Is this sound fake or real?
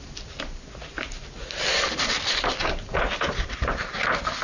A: real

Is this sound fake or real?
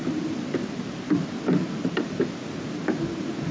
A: real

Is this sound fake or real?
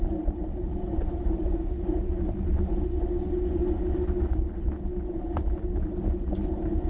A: real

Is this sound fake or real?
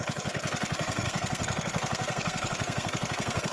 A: fake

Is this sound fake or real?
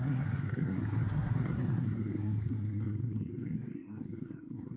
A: fake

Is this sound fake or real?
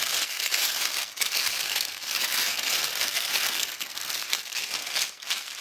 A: fake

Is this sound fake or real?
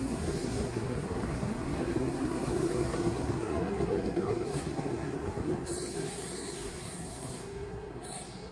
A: fake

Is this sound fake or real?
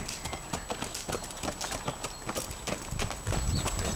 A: real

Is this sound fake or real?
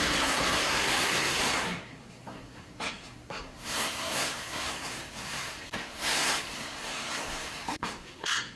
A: fake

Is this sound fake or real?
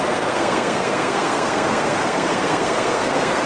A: fake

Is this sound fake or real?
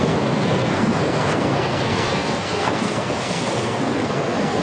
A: fake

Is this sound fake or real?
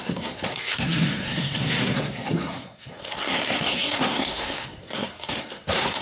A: fake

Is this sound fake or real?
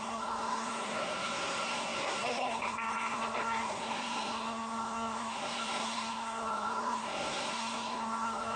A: fake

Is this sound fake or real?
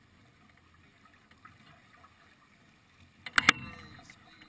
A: real